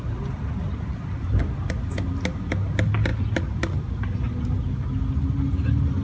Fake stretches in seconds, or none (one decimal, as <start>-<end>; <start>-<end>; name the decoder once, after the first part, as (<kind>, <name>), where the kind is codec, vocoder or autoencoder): none